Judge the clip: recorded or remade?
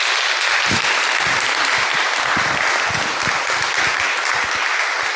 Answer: recorded